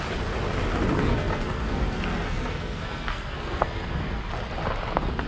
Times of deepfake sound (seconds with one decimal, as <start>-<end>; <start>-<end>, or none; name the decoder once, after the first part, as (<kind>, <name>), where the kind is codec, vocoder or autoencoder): 1.1-4.2 (codec, SNAC)